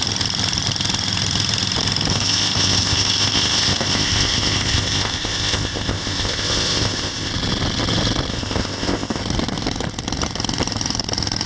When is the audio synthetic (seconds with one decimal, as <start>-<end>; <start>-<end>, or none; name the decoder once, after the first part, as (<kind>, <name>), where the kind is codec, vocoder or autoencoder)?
2.1-7.3 (codec, ZipCodec); 8.3-9.2